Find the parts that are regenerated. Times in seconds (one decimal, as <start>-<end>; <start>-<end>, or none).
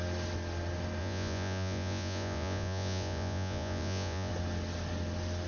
1.0-4.3